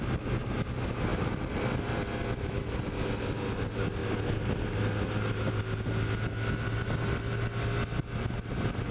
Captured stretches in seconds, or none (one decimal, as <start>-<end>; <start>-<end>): 0.0-1.1; 2.8-8.9

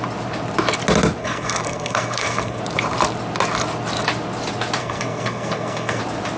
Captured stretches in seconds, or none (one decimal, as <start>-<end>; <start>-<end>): 0.0-1.2; 2.6-4.8; 6.0-6.4

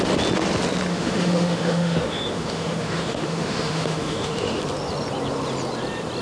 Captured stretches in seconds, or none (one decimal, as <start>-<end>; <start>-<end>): 0.0-0.9; 4.6-6.2